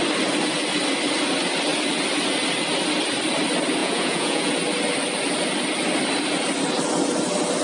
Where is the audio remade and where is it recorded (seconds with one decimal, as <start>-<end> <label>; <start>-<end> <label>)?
0.0-3.8 recorded; 3.8-4.5 remade; 4.5-7.6 recorded

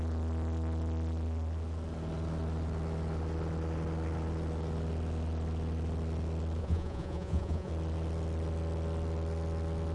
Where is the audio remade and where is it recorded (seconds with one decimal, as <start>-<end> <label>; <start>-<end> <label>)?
0.0-6.6 recorded; 6.6-7.7 remade; 7.7-9.9 recorded

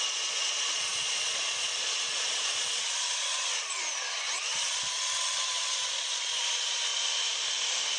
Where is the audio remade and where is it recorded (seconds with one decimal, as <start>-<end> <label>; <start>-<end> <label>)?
0.0-6.9 remade; 6.9-8.0 recorded

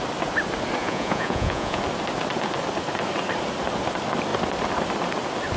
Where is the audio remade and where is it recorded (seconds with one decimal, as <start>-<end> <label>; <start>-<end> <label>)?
0.0-0.8 recorded; 0.8-1.8 remade; 1.8-5.6 recorded

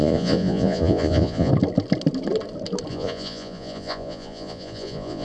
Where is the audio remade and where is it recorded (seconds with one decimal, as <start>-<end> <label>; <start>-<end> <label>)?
0.0-1.5 remade; 1.5-2.9 recorded; 2.9-5.2 remade

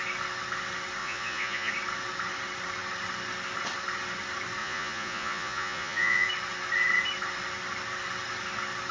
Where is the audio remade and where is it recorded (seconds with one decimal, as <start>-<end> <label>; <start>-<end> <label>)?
0.0-1.0 recorded; 1.0-1.7 remade; 1.7-4.6 recorded; 4.6-6.3 remade; 6.3-8.9 recorded

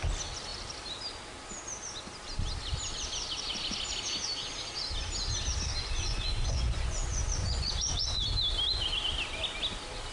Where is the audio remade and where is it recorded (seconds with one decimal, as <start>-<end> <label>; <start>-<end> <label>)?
0.0-5.8 recorded; 5.8-8.2 remade; 8.2-10.1 recorded